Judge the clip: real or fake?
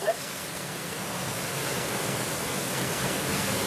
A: fake